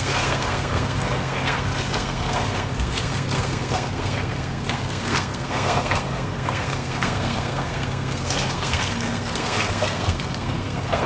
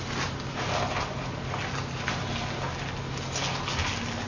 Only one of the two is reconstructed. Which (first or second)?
first